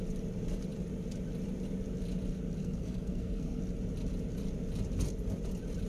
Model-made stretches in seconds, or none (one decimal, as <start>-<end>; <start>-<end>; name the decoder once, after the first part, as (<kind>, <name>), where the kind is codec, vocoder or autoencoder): 2.6-3.6 (codec, SNAC)